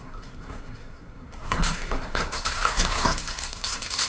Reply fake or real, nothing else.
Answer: fake